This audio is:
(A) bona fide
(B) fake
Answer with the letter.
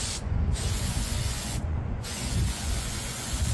B